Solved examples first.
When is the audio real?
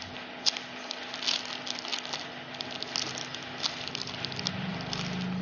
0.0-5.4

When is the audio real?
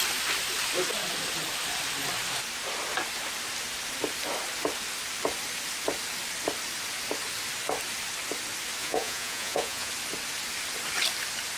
0.0-8.8; 9.9-11.6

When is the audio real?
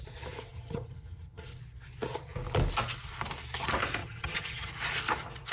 0.0-0.5; 1.6-4.0; 4.7-5.5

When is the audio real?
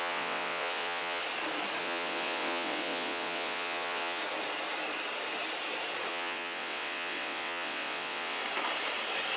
1.2-1.8; 4.2-6.1; 8.4-9.4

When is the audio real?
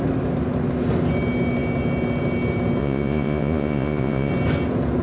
0.0-2.8; 4.3-5.0